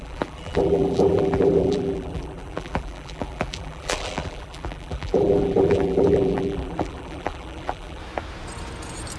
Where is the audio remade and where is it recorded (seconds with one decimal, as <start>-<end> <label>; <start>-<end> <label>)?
0.0-8.0 remade; 8.0-9.2 recorded